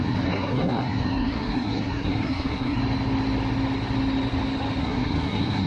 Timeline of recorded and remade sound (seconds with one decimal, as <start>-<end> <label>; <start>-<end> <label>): 0.0-2.8 remade; 2.8-4.8 recorded; 4.8-5.7 remade